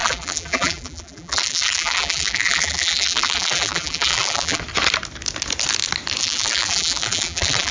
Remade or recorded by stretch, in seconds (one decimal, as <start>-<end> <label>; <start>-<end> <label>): 0.0-4.6 remade; 4.6-6.2 recorded; 6.2-7.7 remade